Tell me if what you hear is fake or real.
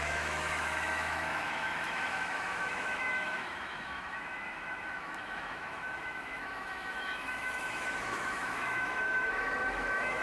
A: fake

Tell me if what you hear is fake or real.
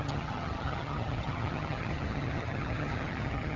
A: fake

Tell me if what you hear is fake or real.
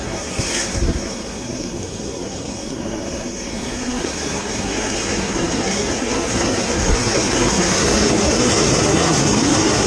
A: fake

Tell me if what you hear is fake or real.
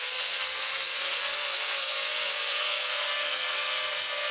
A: fake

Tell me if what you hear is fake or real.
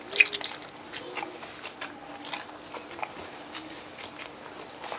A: real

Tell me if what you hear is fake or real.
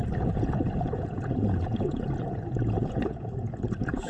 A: fake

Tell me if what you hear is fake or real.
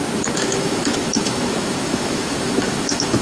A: fake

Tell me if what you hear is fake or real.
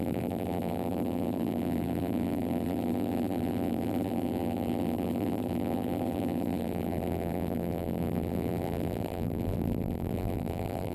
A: fake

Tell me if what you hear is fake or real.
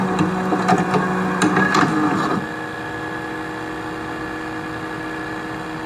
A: real